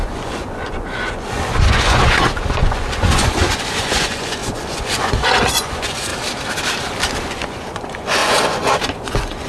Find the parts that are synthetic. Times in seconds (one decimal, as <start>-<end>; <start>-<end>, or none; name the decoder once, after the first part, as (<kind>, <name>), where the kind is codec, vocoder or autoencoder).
0.0-6.1 (vocoder, Vocos); 7.2-9.5